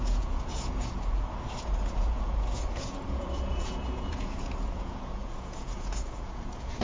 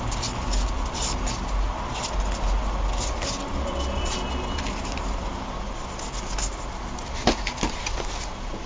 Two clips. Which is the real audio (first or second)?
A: second